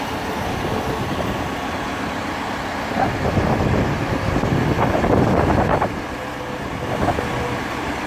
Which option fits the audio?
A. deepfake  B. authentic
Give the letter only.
B